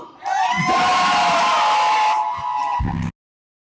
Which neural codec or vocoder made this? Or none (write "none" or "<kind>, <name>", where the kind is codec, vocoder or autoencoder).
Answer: none